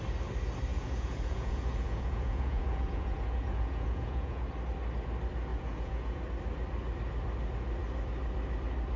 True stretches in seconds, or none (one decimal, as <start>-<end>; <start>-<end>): 0.0-0.7; 4.4-5.5; 6.2-9.0